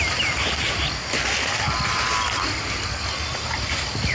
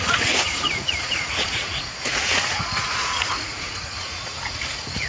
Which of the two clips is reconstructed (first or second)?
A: second